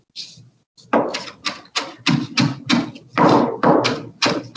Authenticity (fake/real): real